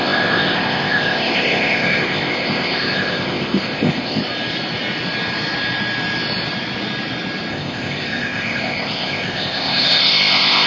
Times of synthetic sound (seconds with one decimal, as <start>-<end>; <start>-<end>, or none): 0.0-4.2; 7.5-10.7